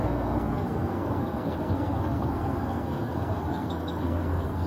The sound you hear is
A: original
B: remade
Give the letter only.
B